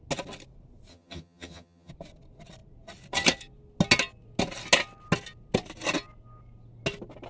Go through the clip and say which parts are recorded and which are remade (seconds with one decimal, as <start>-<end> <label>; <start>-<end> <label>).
0.0-0.9 recorded; 0.9-1.9 remade; 1.9-7.3 recorded